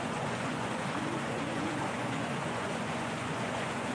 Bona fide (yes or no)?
no